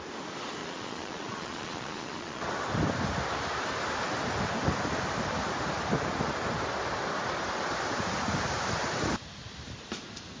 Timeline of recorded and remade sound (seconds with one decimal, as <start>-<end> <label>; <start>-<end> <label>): 0.0-0.6 recorded; 0.6-2.4 remade; 2.4-10.4 recorded